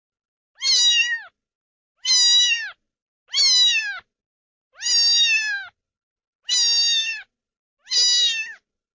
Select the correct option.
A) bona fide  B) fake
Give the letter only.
A